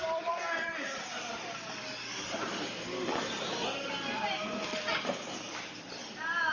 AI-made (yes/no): no